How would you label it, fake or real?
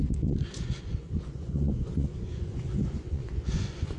fake